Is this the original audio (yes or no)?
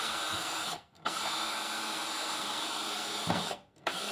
no